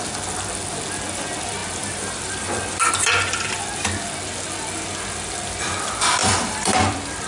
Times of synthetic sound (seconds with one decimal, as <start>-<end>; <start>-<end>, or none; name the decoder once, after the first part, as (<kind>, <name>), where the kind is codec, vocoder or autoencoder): 1.6-2.9 (vocoder, BigVGAN v2); 6.2-7.3